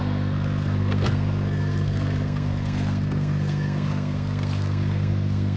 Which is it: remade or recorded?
remade